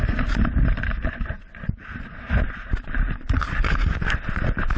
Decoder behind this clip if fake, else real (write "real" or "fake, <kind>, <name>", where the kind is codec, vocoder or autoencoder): real